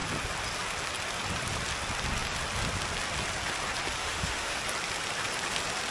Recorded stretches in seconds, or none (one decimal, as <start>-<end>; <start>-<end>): 0.0-4.0; 4.6-5.9